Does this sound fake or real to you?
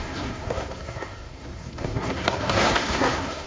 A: fake